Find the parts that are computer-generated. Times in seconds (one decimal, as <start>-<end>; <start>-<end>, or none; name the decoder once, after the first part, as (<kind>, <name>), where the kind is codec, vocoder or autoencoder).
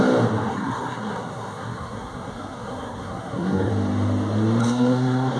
0.5-3.7 (codec, SNAC); 4.6-5.4